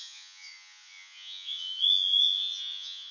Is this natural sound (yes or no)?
no